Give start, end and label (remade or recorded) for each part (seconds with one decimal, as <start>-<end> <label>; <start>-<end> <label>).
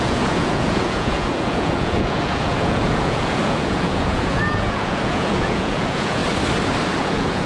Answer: 0.0-6.2 remade; 6.2-7.0 recorded; 7.0-7.5 remade